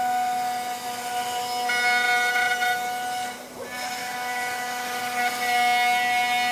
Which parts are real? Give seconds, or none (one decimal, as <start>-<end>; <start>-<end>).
0.0-4.0; 5.0-6.5

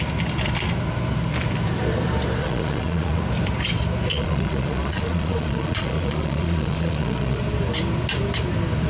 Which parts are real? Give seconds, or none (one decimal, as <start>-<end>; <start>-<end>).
0.0-2.4; 3.2-4.1; 7.4-8.9